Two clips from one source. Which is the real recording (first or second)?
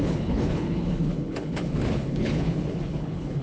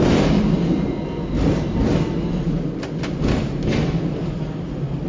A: second